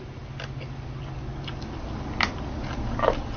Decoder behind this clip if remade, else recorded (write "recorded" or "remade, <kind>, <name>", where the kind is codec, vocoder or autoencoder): recorded